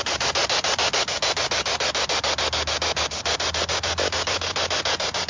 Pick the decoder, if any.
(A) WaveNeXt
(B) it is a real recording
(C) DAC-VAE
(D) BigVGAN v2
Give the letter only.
B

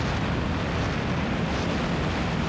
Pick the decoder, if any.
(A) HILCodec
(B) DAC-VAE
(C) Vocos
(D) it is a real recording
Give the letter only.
D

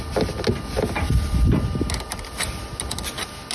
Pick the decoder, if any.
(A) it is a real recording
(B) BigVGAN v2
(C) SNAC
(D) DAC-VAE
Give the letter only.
A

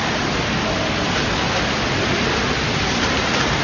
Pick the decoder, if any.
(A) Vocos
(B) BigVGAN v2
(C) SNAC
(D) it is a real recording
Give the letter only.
D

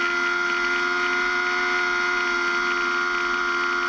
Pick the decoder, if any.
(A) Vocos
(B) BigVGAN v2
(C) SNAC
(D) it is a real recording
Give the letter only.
D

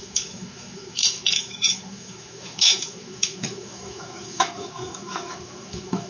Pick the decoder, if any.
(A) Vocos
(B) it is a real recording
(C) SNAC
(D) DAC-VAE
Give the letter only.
D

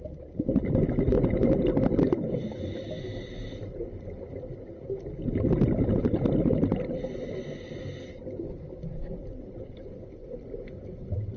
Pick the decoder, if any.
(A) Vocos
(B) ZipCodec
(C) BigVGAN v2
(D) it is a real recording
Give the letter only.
D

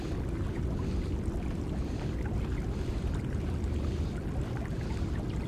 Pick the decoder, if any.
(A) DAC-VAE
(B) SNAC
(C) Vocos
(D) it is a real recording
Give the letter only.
D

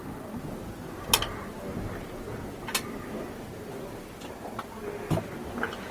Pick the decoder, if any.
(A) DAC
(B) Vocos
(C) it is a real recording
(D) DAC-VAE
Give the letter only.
C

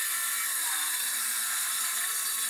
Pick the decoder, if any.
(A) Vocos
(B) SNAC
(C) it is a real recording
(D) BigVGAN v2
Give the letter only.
D